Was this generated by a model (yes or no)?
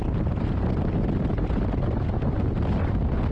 no